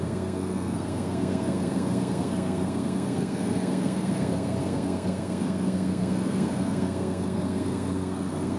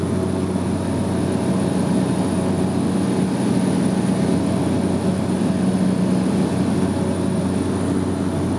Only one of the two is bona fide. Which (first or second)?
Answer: second